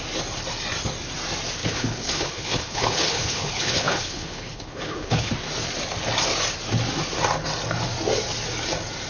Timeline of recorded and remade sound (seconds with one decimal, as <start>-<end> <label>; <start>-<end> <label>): 0.0-1.6 recorded; 1.6-5.3 remade; 5.3-9.1 recorded